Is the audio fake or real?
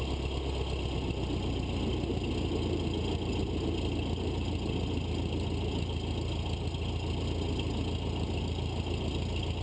real